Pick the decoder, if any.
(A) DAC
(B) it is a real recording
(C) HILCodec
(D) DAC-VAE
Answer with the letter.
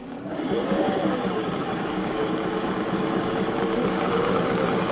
A